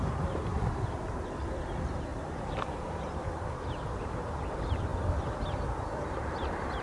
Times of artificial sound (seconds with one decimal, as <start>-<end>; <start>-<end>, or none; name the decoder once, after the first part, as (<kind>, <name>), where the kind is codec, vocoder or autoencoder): 0.0-4.9 (vocoder, BigVGAN v2); 6.2-6.8